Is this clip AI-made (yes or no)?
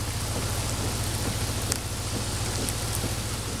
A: no